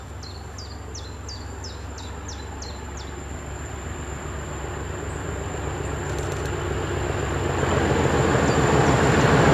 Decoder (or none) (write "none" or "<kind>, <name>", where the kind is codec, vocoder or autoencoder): none